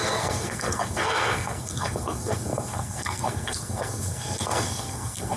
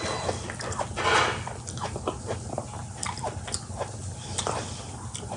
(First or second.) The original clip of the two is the second